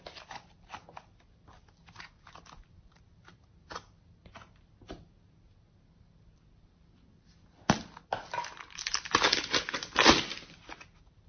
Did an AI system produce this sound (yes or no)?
no